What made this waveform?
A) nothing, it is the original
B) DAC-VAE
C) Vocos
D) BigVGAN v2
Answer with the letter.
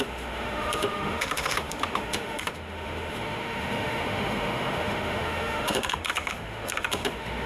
B